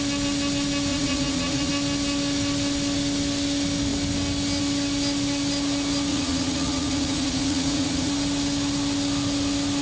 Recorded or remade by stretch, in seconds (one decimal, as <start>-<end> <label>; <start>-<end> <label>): 0.0-0.9 recorded; 0.9-1.7 remade; 1.7-6.1 recorded; 6.1-8.1 remade; 8.1-9.8 recorded